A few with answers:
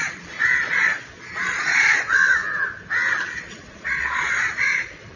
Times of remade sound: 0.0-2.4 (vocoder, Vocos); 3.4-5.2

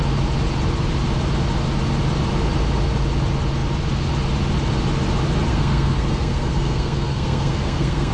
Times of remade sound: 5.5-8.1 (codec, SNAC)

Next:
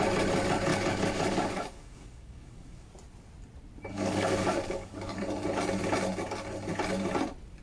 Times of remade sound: 0.7-2.9 (codec, DAC); 3.9-5.2

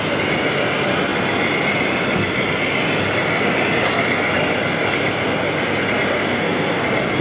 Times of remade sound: 6.1-6.8 (codec, SNAC)